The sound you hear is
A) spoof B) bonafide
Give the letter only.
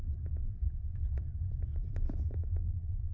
A